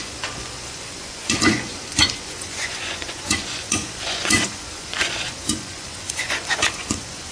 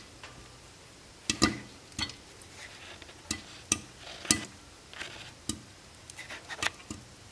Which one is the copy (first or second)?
first